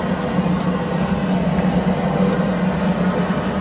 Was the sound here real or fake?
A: real